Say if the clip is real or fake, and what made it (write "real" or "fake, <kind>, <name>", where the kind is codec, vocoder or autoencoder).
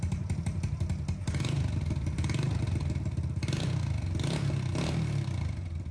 real